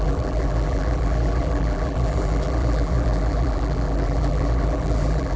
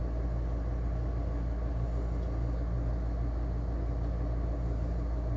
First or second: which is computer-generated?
first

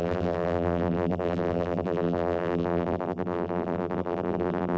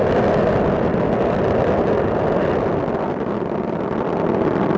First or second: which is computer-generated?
first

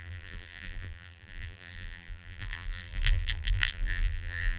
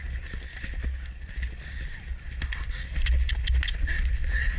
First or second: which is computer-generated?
first